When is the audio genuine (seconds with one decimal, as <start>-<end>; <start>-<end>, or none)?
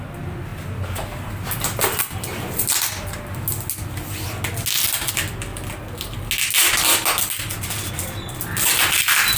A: 0.0-9.4